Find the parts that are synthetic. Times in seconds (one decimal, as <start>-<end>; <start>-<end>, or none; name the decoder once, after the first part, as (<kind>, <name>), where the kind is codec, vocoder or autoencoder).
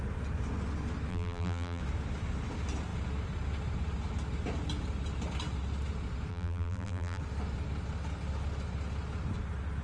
1.1-1.8 (vocoder, BigVGAN v2); 6.3-7.2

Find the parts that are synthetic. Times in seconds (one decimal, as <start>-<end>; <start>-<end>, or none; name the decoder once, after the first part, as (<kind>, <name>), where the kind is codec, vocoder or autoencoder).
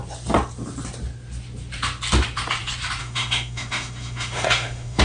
3.0-5.0 (autoencoder, DAC-VAE)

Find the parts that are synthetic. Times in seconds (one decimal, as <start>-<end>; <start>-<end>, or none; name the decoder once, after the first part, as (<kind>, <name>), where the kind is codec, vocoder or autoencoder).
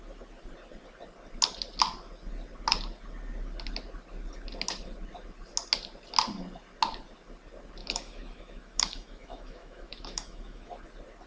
7.8-10.7 (autoencoder, DAC-VAE)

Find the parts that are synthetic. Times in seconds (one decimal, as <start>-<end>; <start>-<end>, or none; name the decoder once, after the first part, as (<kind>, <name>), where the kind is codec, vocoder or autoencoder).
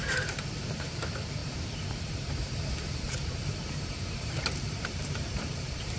0.0-6.0 (vocoder, BigVGAN v2)